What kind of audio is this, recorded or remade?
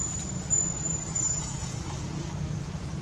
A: remade